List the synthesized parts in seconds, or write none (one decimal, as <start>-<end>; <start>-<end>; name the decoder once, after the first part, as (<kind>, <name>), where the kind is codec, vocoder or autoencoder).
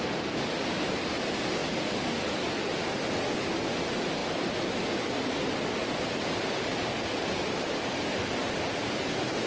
1.6-2.3 (vocoder, BigVGAN v2); 4.2-8.5